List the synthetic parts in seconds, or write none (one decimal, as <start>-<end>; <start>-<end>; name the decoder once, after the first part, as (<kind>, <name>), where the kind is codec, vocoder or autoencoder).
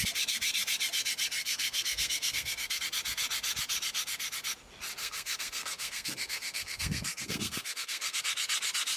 1.4-2.8 (codec, SNAC); 5.0-8.2